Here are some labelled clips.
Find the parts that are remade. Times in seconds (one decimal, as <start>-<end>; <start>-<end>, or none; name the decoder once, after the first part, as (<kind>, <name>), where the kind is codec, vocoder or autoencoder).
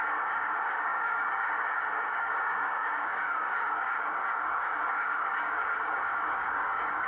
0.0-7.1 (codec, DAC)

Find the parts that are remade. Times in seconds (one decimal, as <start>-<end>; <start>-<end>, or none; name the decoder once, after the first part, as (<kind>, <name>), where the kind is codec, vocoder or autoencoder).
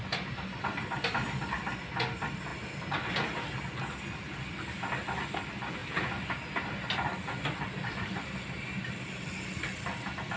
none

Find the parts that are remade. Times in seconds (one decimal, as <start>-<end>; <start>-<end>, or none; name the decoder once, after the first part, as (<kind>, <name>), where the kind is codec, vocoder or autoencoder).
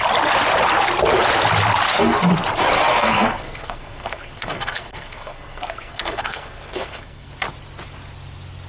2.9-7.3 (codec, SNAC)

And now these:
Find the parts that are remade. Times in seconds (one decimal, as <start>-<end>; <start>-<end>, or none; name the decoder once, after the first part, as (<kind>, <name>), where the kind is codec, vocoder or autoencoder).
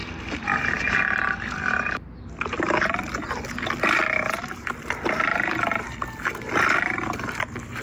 none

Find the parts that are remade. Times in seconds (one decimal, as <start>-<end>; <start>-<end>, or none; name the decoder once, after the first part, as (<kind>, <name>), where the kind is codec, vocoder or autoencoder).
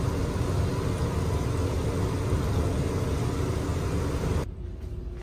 none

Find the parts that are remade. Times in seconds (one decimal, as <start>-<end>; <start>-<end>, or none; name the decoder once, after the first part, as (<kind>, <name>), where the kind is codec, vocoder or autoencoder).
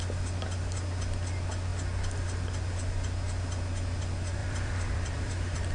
4.4-5.7 (vocoder, BigVGAN v2)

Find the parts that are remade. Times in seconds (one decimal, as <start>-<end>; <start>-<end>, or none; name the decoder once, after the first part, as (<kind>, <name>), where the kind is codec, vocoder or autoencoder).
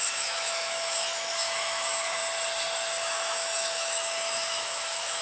0.0-2.2 (autoencoder, DAC-VAE); 3.0-5.2